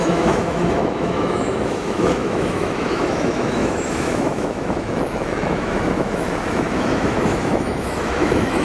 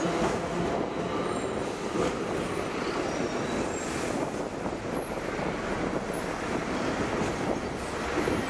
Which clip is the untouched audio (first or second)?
second